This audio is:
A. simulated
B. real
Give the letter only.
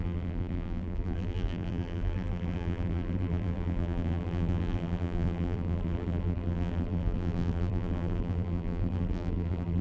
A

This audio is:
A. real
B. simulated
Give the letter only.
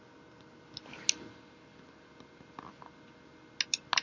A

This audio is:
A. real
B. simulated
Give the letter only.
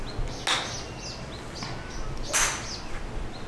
A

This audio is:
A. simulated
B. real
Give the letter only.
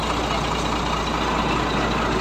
B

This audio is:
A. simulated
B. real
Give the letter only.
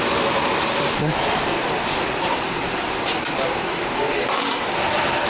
A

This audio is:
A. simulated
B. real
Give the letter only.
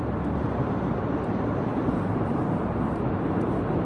A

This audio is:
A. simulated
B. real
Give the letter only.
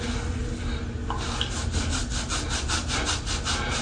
B